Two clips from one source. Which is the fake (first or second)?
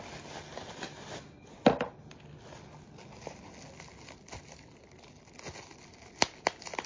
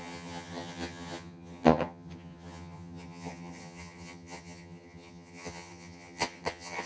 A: second